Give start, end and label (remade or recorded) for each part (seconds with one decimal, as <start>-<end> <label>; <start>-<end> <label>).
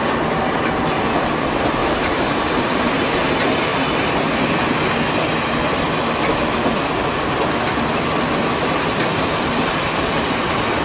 0.0-1.8 recorded; 1.8-2.3 remade; 2.3-10.8 recorded